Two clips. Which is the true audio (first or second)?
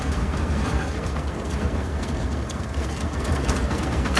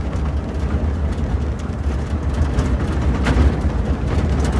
second